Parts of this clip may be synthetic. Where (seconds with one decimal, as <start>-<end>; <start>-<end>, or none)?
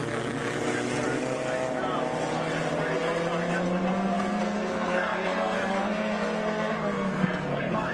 3.9-7.9